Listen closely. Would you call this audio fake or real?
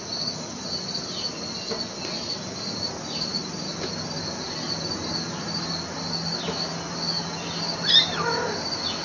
real